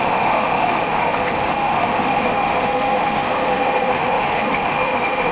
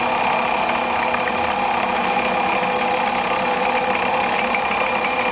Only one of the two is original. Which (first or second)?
second